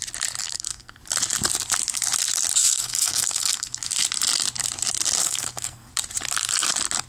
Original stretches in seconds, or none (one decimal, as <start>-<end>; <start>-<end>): 0.0-0.4; 1.0-2.6; 3.9-5.2; 5.9-7.1